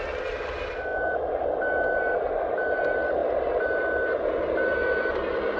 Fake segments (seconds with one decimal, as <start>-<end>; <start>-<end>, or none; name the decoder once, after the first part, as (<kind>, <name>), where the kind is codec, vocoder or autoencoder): none